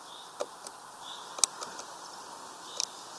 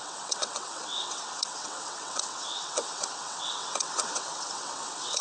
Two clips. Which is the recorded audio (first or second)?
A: first